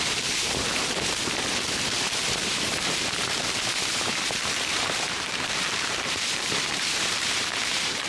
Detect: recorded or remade remade